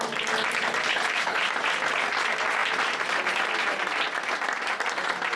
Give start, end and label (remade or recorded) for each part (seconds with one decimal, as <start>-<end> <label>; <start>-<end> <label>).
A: 0.0-0.9 recorded; 0.9-1.4 remade; 1.4-5.4 recorded